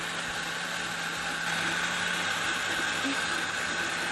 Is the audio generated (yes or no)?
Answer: no